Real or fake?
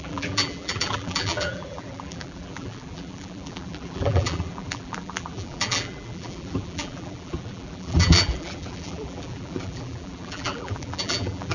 fake